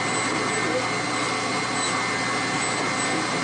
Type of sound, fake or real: real